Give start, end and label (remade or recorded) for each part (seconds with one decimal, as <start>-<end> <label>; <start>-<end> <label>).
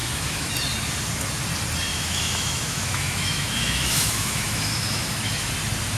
0.0-0.5 remade; 0.5-1.9 recorded; 1.9-5.5 remade; 5.5-6.0 recorded